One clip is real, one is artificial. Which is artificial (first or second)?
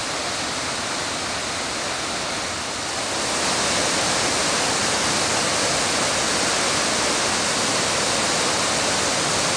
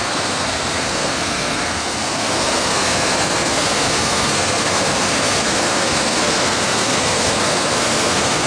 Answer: second